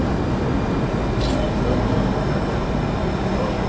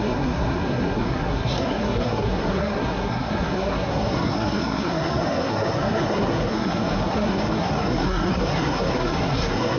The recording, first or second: first